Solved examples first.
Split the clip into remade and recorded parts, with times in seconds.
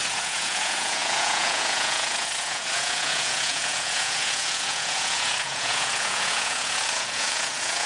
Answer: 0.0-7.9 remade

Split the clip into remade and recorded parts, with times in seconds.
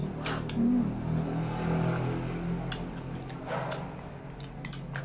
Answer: 0.0-5.0 recorded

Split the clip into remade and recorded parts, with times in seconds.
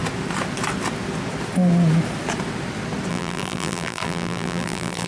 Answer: 0.0-3.1 recorded; 3.1-5.1 remade